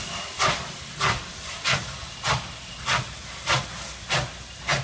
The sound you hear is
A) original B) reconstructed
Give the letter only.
A